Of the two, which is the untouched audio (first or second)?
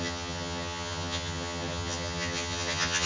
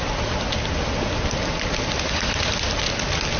second